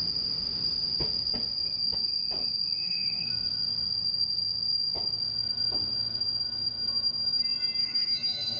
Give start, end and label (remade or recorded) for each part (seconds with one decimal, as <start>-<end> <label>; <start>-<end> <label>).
0.0-2.8 recorded; 2.8-3.3 remade; 3.3-7.8 recorded; 7.8-8.6 remade